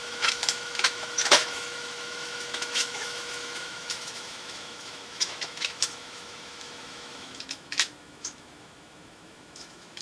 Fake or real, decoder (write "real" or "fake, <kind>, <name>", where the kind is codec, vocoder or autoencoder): fake, autoencoder, DAC-VAE